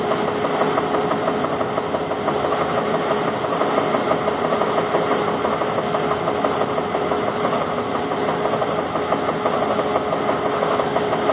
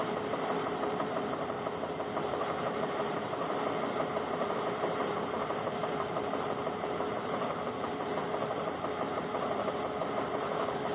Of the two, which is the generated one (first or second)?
second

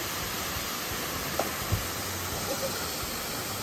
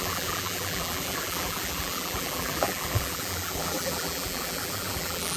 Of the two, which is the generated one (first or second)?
second